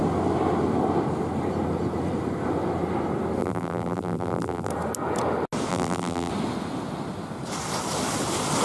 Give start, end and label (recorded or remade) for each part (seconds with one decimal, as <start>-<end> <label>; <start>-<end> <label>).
0.0-3.4 recorded; 3.4-4.7 remade; 4.7-5.7 recorded; 5.7-6.3 remade; 6.3-8.6 recorded